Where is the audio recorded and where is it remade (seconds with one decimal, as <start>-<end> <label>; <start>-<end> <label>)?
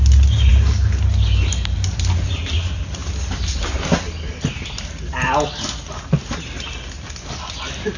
0.0-8.0 recorded